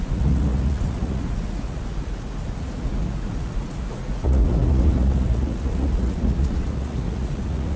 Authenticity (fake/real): fake